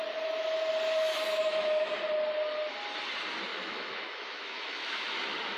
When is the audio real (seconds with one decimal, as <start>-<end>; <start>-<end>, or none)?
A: 0.0-1.1; 1.9-3.5